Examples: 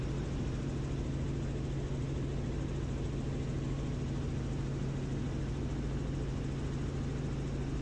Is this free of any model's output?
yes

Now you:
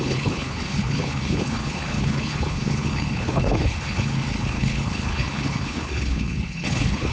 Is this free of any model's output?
no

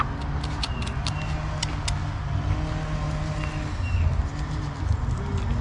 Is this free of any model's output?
yes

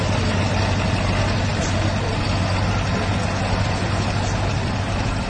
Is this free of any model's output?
yes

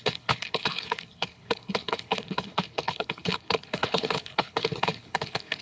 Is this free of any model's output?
no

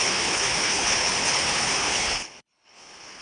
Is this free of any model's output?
no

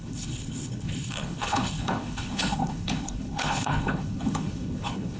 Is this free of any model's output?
no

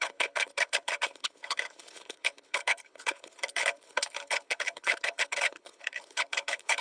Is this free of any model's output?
no